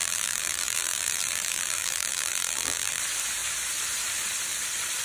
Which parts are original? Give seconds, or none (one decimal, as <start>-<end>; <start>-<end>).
3.0-5.0